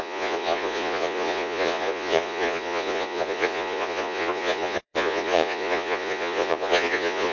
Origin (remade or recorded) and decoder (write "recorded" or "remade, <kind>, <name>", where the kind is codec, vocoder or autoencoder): remade, vocoder, Vocos